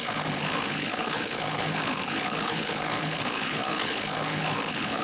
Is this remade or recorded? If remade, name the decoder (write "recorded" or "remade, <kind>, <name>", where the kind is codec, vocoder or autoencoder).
remade, codec, HILCodec